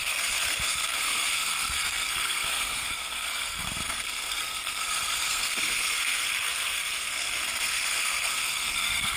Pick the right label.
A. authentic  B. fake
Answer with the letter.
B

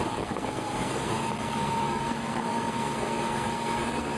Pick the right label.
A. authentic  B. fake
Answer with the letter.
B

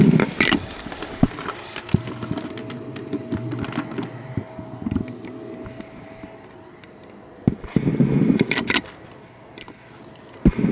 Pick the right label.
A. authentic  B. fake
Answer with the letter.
A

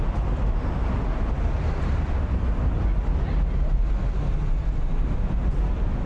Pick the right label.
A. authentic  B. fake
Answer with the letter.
A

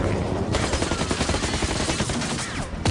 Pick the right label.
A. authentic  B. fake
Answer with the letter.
A